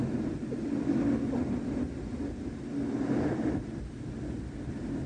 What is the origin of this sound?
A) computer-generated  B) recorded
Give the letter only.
B